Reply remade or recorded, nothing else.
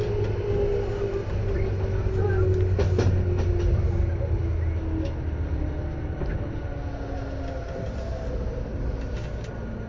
recorded